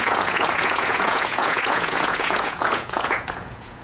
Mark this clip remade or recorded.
remade